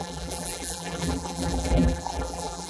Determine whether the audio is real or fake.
fake